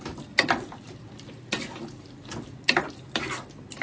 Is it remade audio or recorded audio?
recorded